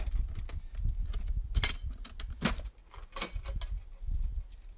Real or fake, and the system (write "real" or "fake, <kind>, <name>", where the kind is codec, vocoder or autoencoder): real